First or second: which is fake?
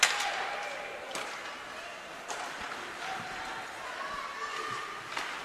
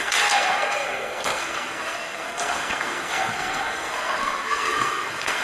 second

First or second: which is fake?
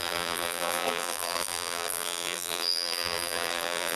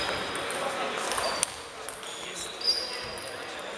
first